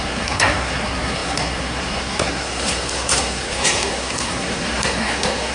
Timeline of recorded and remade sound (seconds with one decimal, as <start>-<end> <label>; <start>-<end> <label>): 0.0-5.5 remade

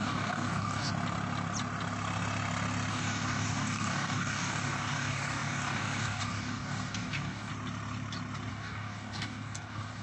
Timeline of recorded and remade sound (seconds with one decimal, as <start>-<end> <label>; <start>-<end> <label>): 0.0-0.9 remade; 0.9-2.9 recorded; 2.9-7.5 remade; 7.5-8.5 recorded; 8.5-10.0 remade

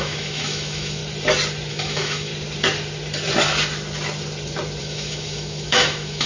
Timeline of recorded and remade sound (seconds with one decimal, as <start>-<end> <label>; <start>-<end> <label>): 0.0-1.0 remade; 1.0-1.7 recorded; 1.7-2.3 remade; 2.3-4.8 recorded; 4.8-6.3 remade

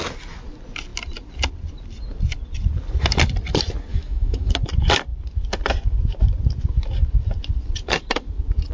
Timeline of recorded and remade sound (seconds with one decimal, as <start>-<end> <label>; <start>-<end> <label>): 0.0-3.9 recorded; 3.9-4.5 remade; 4.5-8.7 recorded

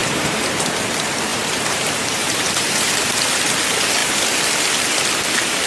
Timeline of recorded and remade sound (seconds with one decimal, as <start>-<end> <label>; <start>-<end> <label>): 0.0-0.7 remade; 0.7-1.3 recorded; 1.3-2.9 remade; 2.9-5.7 recorded

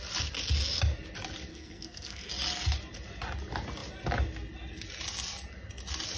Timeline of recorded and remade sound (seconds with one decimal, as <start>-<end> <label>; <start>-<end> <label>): 0.0-1.5 recorded; 1.5-2.3 remade; 2.3-6.2 recorded

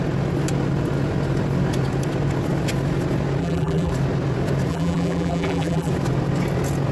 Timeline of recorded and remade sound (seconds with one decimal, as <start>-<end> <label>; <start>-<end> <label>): 0.0-3.4 recorded; 3.4-3.9 remade; 3.9-4.7 recorded; 4.7-5.9 remade; 5.9-6.9 recorded